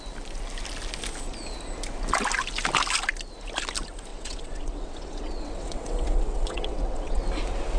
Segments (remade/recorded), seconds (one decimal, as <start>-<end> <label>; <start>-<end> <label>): 0.0-4.1 recorded; 4.1-7.2 remade; 7.2-7.8 recorded